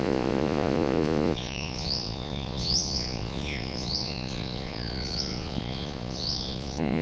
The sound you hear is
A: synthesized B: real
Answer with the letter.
A